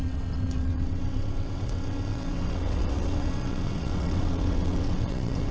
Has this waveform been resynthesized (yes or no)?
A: yes